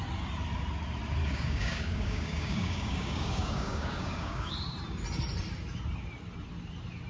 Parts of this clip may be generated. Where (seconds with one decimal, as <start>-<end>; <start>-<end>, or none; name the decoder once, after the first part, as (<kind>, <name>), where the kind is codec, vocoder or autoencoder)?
1.2-4.5 (codec, DAC)